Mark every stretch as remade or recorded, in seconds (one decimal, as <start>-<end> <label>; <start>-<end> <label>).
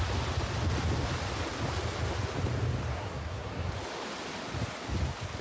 0.0-2.9 recorded; 2.9-3.7 remade; 3.7-5.4 recorded